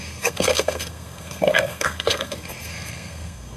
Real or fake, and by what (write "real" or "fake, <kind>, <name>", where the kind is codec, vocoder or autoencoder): fake, codec, SNAC